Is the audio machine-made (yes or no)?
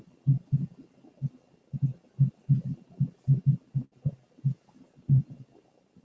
no